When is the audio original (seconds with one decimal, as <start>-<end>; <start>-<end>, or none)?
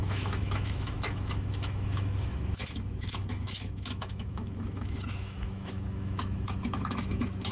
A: none